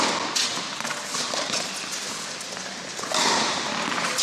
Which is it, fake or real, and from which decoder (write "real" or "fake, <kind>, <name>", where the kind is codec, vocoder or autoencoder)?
real